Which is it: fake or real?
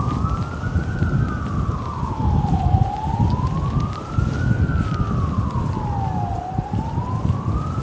real